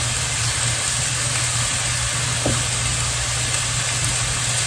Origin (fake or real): real